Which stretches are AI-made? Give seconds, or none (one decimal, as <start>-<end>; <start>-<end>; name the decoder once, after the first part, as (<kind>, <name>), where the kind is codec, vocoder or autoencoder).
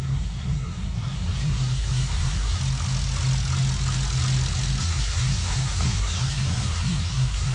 0.0-2.6 (codec, SNAC); 4.8-7.5